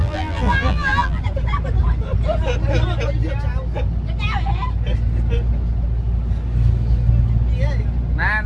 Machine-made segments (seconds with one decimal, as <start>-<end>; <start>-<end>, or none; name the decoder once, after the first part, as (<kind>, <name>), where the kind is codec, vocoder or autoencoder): 0.0-1.2 (vocoder, BigVGAN v2)